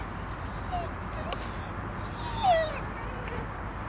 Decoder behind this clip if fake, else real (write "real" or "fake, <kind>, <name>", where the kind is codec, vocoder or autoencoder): real